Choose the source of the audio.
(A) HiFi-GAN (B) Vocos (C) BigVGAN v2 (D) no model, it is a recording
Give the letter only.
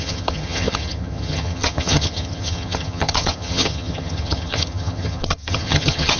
A